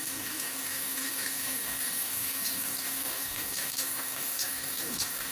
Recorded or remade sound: remade